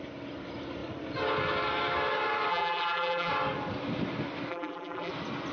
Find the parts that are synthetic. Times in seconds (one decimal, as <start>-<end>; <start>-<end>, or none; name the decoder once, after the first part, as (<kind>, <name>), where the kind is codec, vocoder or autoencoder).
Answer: 2.5-3.3 (vocoder, BigVGAN v2); 4.5-5.1